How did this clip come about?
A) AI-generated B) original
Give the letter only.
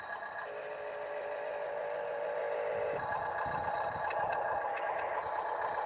A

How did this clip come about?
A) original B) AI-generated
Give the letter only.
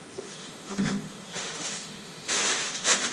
B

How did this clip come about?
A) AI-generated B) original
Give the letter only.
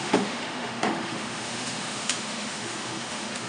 A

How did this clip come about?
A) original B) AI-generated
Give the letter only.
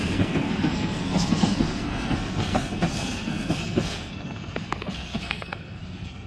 B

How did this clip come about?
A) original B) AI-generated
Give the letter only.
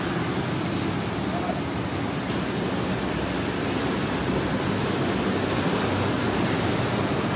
A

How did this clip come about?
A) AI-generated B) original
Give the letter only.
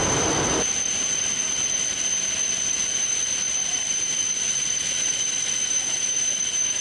B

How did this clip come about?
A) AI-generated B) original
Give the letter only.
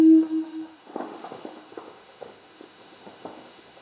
A